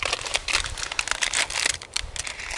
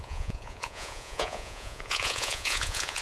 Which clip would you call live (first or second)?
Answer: first